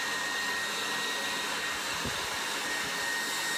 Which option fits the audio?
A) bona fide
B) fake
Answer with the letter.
A